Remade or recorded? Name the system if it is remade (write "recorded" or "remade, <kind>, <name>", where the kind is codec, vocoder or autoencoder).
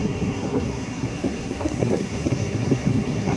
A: remade, codec, SNAC